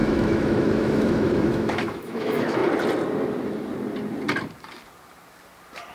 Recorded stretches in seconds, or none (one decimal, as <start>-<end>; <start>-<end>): 2.6-5.9